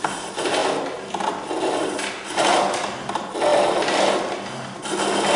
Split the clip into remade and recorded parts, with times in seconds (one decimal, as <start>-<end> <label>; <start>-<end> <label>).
0.0-5.4 recorded